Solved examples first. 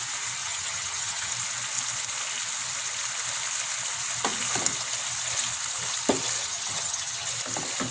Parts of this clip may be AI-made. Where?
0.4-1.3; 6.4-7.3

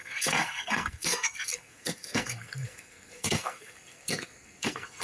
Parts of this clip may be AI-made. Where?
0.0-5.0

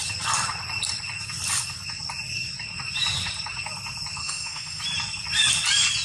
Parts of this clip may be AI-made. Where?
4.2-4.8

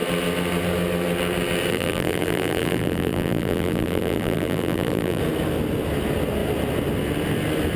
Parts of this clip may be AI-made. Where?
1.7-5.2

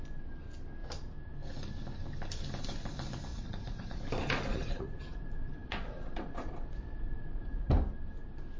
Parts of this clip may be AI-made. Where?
3.3-4.0; 4.5-7.7

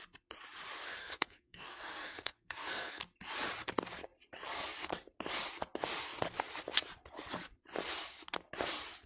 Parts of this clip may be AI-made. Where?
1.0-3.0

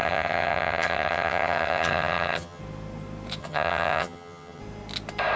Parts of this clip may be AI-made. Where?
0.0-2.6; 3.4-4.6

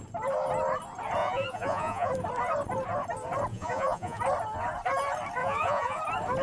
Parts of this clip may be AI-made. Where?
1.2-2.1; 3.5-4.2; 5.4-6.0